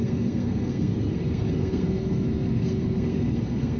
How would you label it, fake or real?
fake